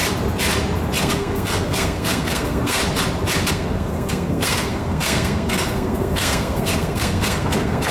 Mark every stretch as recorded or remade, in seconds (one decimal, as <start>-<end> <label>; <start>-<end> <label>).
0.0-1.0 recorded; 1.0-2.8 remade; 2.8-3.5 recorded; 3.5-7.9 remade